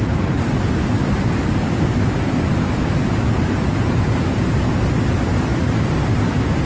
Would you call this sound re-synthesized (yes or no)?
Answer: no